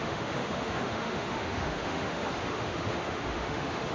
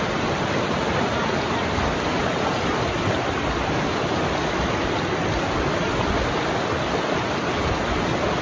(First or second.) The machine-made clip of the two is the first